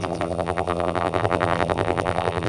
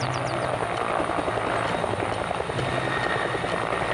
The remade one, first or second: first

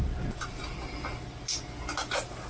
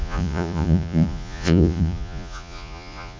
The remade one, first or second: second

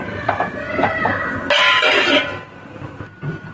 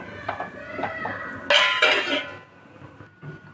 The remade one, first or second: first